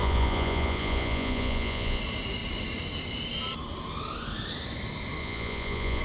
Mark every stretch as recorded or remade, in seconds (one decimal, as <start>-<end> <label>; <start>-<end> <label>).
0.0-2.0 remade; 2.0-5.2 recorded; 5.2-6.0 remade